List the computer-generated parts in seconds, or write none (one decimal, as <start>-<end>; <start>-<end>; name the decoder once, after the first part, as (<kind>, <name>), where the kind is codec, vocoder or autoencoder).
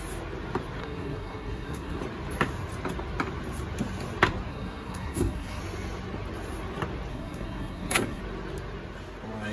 0.8-2.0 (codec, SNAC); 4.5-5.6; 7.1-8.2